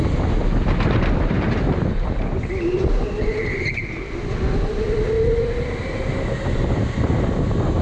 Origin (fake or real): real